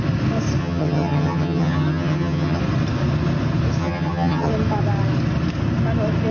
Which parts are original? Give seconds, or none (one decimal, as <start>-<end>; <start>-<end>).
0.0-0.6; 2.6-3.8; 4.5-6.3